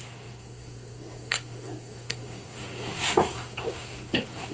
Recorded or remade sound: remade